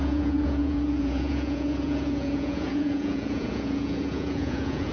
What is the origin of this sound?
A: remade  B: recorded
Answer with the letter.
A